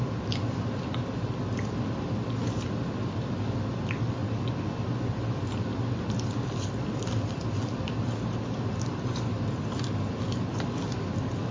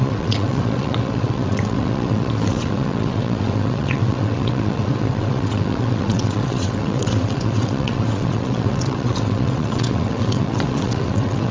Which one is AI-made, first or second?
second